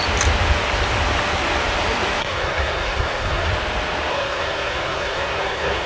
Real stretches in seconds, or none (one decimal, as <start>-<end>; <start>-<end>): 0.0-2.2; 3.5-4.1